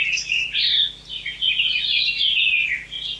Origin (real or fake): real